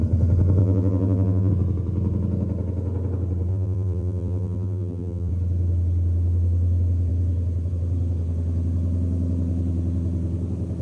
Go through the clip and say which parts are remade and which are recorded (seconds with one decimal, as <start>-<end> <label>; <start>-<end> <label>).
0.0-0.6 recorded; 0.6-1.5 remade; 1.5-3.5 recorded; 3.5-5.3 remade; 5.3-10.8 recorded